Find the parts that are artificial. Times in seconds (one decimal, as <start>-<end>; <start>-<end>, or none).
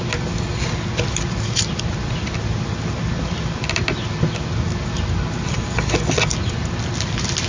0.5-3.8